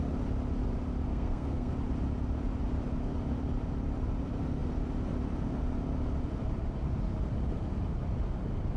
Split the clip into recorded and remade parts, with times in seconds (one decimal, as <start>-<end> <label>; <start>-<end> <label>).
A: 0.0-1.1 recorded; 1.1-1.7 remade; 1.7-8.8 recorded